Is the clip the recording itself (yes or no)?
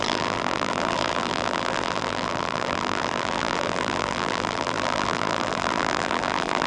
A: no